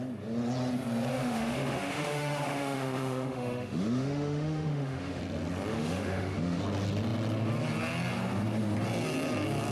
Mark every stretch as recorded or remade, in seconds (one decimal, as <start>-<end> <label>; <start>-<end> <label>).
0.0-1.1 recorded; 1.1-5.2 remade; 5.2-5.7 recorded; 5.7-6.6 remade; 6.6-9.7 recorded